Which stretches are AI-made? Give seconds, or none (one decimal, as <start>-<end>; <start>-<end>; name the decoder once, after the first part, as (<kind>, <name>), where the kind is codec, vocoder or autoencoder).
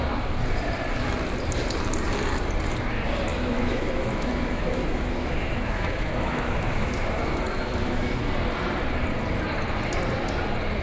3.3-8.3 (autoencoder, DAC-VAE)